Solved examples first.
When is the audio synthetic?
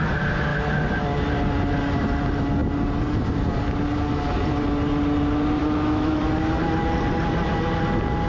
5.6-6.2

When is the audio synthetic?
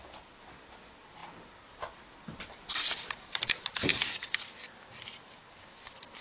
1.2-3.5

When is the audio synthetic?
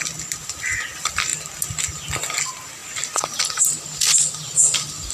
none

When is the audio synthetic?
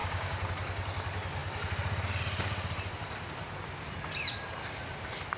0.0-0.5